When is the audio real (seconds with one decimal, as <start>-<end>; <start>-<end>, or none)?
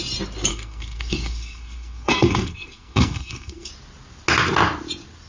0.0-0.5; 3.7-5.3